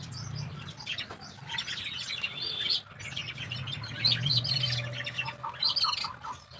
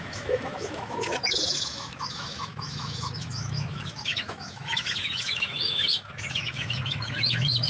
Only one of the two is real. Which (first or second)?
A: first